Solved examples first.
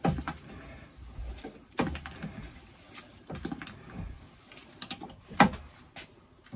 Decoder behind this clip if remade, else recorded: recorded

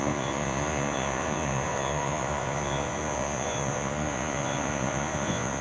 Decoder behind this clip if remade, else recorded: remade, vocoder, Vocos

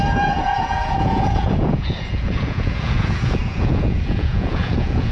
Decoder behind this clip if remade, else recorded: remade, vocoder, Vocos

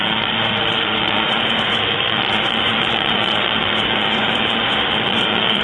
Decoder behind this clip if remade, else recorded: remade, vocoder, Vocos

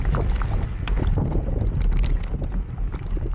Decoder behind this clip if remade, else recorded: recorded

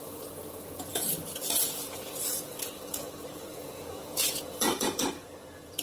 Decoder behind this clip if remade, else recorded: remade, vocoder, Vocos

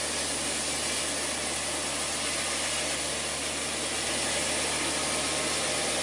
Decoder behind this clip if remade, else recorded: recorded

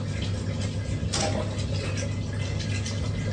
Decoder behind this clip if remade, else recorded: recorded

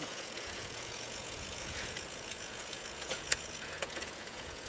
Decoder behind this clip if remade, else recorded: remade, vocoder, Vocos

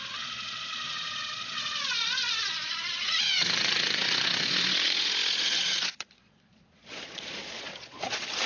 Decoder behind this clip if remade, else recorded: remade, vocoder, Vocos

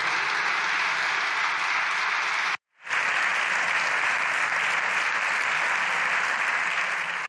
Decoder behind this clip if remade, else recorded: recorded